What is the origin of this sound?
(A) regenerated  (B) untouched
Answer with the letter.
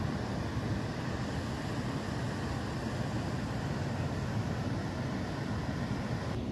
B